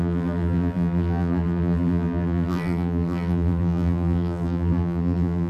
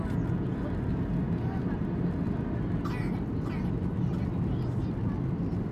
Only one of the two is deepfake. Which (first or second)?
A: first